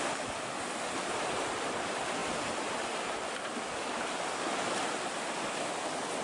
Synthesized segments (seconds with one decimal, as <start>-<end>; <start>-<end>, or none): none